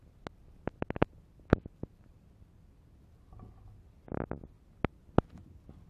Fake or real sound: real